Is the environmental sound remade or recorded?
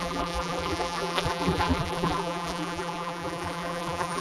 remade